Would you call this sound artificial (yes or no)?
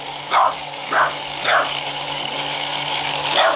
yes